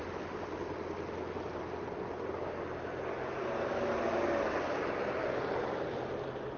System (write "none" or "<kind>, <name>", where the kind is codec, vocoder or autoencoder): none